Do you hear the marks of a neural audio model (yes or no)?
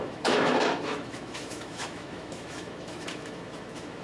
yes